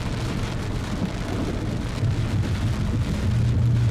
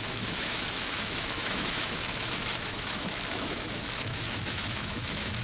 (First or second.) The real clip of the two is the first